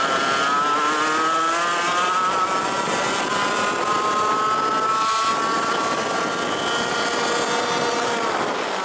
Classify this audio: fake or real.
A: real